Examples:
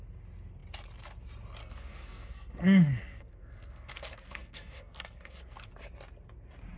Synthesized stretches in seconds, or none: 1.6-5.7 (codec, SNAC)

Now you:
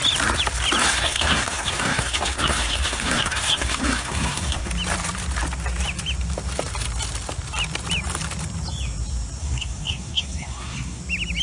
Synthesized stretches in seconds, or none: 0.8-4.7 (codec, SNAC); 9.4-11.0

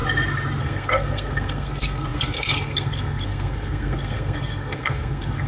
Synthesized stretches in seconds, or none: 0.6-5.5 (codec, SNAC)

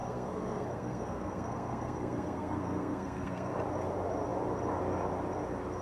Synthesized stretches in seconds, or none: 0.0-3.5 (codec, SNAC)